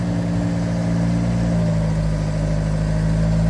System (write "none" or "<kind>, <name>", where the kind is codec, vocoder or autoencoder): none